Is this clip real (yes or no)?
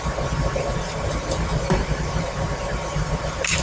no